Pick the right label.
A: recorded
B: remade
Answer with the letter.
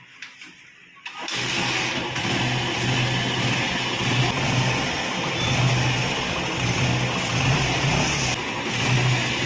A